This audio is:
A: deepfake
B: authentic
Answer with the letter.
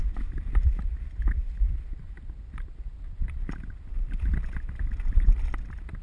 B